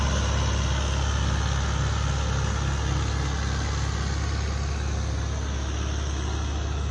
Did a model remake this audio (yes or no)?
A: no